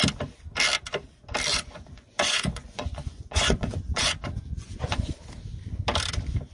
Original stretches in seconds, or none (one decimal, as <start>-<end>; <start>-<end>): 0.0-1.5; 5.2-6.5